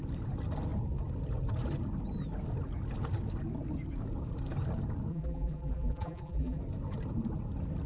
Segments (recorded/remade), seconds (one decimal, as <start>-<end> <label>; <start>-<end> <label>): 0.0-5.1 recorded; 5.1-6.6 remade; 6.6-7.9 recorded